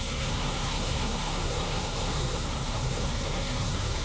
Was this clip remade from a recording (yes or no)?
yes